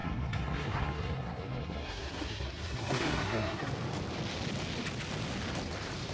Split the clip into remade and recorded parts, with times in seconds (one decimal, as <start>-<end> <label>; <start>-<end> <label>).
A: 0.0-3.7 remade; 3.7-6.1 recorded